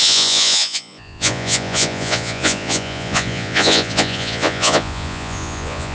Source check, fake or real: fake